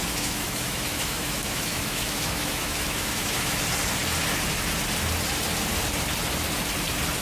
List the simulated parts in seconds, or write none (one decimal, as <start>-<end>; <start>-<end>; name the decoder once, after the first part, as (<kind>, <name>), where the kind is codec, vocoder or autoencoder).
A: 0.0-3.6 (autoencoder, DAC-VAE)